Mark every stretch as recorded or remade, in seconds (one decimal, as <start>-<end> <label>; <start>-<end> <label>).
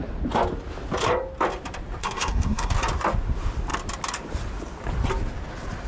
0.0-2.0 recorded; 2.0-2.7 remade; 2.7-5.9 recorded